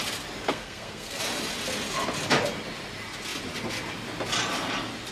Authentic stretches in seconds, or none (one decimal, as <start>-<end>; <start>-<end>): 0.0-0.5; 1.2-5.1